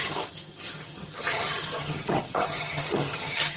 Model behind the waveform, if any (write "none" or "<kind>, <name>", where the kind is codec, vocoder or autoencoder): vocoder, HiFi-GAN